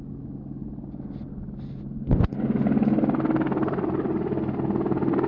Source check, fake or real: real